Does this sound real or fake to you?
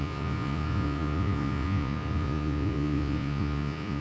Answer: fake